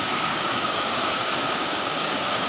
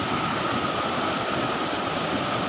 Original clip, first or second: second